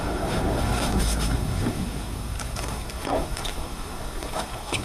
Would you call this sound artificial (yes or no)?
yes